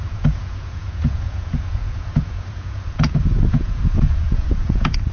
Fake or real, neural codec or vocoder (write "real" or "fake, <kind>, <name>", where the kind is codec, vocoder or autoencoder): fake, vocoder, Vocos